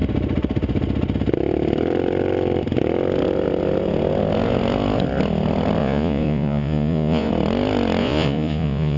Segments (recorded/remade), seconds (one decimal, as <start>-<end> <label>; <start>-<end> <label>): 0.0-5.8 recorded; 5.8-7.3 remade; 7.3-8.0 recorded; 8.0-9.0 remade